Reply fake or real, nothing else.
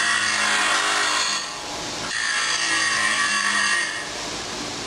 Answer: real